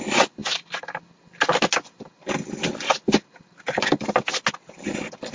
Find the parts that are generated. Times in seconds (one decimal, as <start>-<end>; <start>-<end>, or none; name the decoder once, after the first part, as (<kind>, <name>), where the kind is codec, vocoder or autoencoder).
none